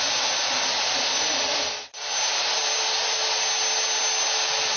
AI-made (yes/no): no